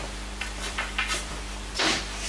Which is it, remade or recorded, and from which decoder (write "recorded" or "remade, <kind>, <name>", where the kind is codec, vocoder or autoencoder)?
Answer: remade, vocoder, BigVGAN v2